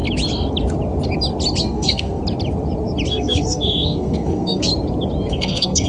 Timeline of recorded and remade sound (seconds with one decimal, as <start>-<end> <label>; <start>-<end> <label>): 0.0-1.6 recorded; 1.6-2.2 remade; 2.2-3.1 recorded; 3.1-4.7 remade; 4.7-5.3 recorded; 5.3-5.9 remade